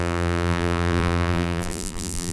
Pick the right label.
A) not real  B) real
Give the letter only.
A